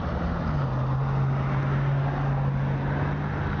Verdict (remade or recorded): recorded